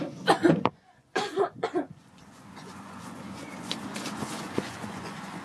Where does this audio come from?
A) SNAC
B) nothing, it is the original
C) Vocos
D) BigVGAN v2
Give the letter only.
C